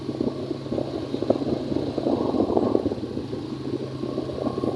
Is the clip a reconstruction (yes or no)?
no